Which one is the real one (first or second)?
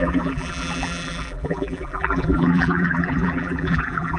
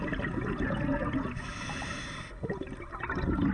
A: second